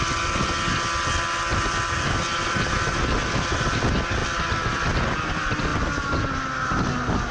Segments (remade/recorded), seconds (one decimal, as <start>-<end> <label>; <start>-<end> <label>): 0.0-7.3 recorded